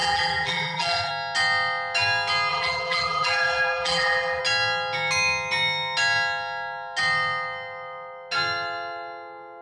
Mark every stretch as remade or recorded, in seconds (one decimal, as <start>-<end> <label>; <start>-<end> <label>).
0.0-1.1 remade; 1.1-2.5 recorded; 2.5-4.4 remade; 4.4-9.6 recorded